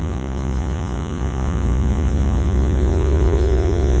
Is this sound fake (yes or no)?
yes